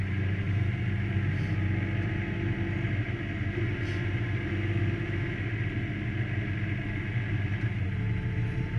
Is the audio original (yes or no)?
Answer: yes